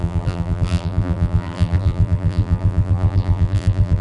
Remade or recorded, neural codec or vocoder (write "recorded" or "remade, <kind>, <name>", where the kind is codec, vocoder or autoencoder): remade, vocoder, BigVGAN v2